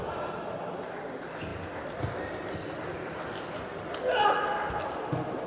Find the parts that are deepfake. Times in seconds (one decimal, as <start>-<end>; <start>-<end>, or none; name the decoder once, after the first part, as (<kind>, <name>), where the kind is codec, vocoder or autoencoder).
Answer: 0.0-1.0 (vocoder, BigVGAN v2)